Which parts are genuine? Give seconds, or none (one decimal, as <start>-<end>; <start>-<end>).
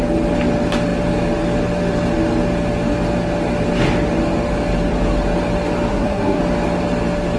0.0-5.9; 6.4-7.4